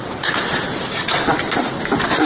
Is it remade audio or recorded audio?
recorded